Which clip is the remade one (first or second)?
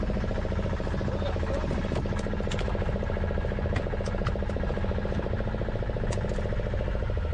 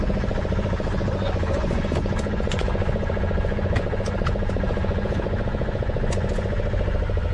second